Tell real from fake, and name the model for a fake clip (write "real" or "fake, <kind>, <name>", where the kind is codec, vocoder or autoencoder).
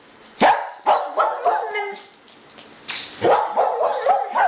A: real